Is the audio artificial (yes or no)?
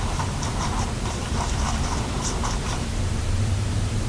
yes